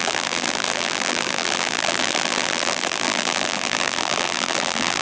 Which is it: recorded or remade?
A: remade